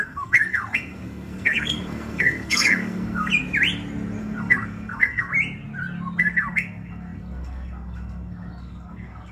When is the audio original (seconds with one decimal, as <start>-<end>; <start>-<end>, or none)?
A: 3.3-4.2; 5.3-6.2